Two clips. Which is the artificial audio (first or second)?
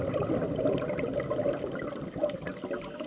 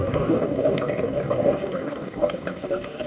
second